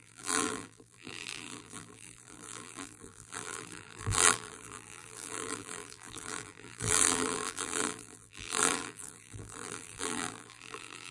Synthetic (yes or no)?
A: yes